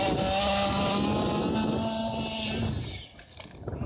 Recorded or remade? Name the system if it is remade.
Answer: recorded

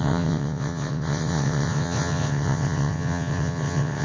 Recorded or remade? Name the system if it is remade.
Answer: remade, vocoder, WaveNeXt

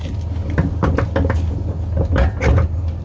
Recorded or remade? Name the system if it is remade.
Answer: recorded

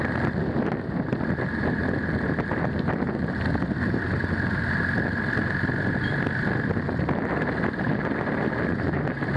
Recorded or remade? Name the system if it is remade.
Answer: recorded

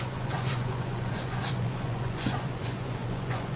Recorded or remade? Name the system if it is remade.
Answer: remade, vocoder, Vocos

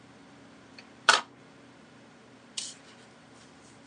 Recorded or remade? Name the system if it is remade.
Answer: remade, vocoder, BigVGAN v2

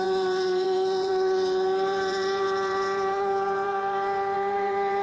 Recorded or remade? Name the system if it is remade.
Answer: remade, vocoder, BigVGAN v2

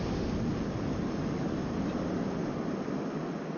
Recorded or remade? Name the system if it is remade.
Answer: recorded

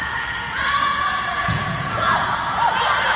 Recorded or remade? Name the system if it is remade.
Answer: remade, vocoder, Vocos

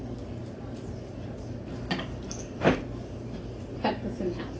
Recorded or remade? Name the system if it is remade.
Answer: recorded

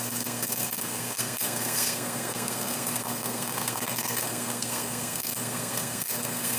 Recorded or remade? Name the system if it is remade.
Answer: remade, codec, SNAC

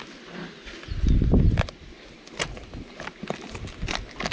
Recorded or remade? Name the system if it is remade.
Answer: recorded